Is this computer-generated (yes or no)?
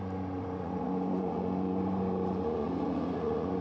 yes